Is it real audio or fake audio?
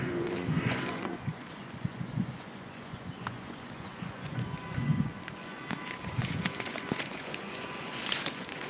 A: fake